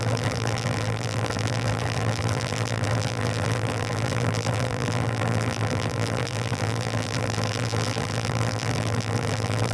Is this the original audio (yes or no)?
no